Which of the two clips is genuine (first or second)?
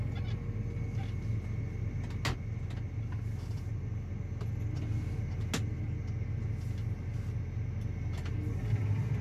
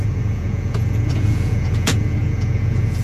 first